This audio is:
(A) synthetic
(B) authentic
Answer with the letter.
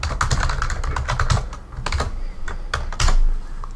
B